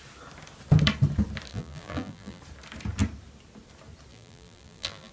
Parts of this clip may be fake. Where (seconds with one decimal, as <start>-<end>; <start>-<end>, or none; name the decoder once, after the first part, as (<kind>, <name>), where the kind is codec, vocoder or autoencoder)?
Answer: 1.5-2.4 (vocoder, BigVGAN v2); 4.1-5.1